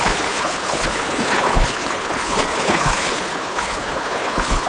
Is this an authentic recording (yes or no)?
no